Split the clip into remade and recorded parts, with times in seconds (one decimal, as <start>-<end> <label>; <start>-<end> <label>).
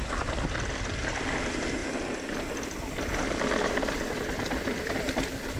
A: 0.0-5.6 recorded